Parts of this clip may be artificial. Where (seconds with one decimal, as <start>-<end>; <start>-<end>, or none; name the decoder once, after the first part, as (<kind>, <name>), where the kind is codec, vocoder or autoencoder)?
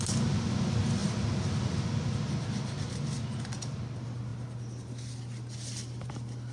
none